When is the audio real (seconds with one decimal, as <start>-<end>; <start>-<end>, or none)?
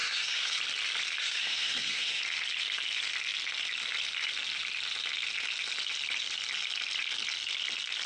0.6-1.2; 2.2-8.1